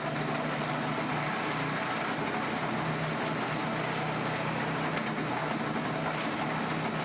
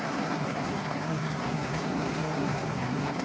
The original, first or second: first